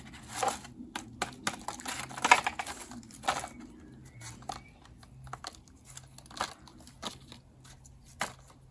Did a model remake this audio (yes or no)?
no